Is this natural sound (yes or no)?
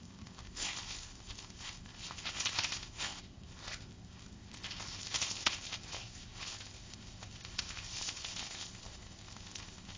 no